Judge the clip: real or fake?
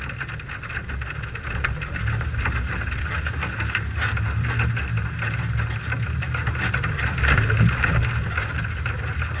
real